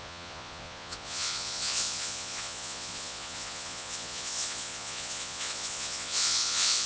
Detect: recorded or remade remade